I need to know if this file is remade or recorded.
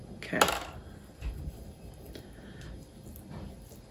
recorded